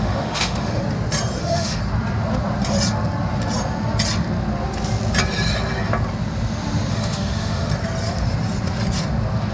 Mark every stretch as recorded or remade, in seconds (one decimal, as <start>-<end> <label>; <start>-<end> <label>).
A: 0.0-0.8 remade; 0.8-1.4 recorded; 1.4-1.8 remade; 1.8-6.9 recorded; 6.9-7.7 remade; 7.7-9.5 recorded